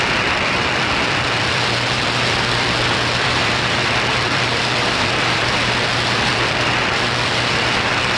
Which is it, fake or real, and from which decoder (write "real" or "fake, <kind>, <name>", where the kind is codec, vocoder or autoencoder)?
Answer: fake, vocoder, BigVGAN v2